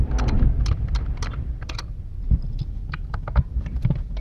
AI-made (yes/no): no